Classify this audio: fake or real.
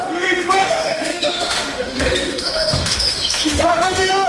fake